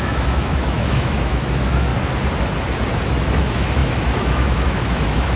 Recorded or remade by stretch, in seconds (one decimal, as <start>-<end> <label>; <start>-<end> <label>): 0.0-1.9 remade; 1.9-3.4 recorded; 3.4-5.4 remade